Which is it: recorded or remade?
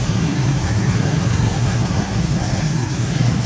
remade